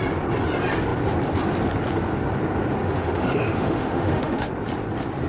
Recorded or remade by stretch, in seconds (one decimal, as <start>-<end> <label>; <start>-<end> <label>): 0.0-2.8 recorded; 2.8-4.5 remade; 4.5-5.3 recorded